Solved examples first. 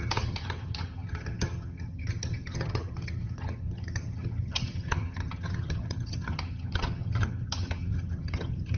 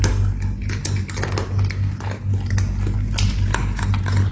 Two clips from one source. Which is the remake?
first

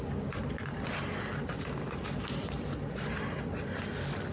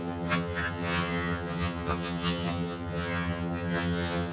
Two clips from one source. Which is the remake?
second